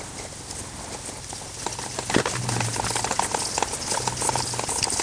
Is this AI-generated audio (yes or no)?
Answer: no